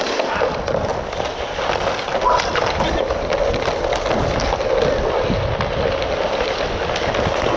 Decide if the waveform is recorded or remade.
recorded